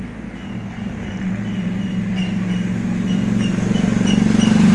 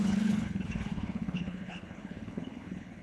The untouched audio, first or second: first